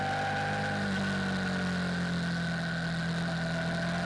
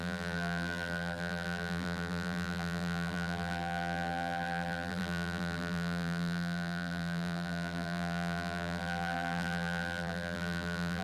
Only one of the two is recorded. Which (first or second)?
first